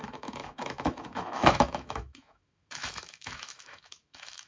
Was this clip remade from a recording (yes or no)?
yes